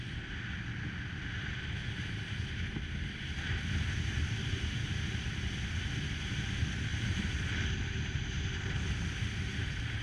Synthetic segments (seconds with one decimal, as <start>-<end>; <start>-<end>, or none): 6.9-7.4